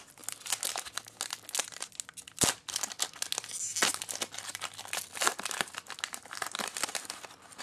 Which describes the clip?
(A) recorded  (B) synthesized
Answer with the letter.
A